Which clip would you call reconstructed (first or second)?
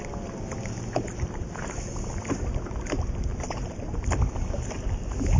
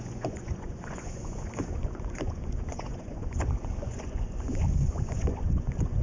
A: second